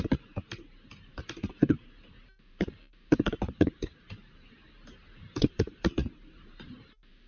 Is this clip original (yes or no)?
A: no